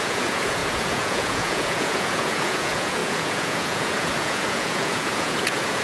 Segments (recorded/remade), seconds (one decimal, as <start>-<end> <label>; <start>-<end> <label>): 0.0-5.8 remade